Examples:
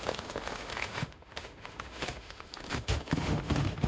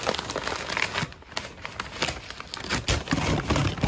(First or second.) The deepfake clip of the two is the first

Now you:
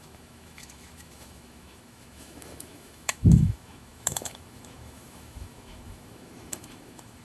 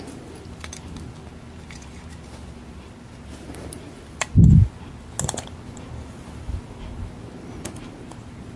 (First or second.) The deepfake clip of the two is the first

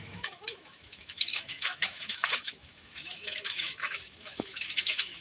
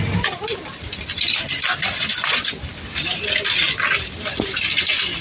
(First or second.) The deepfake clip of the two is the first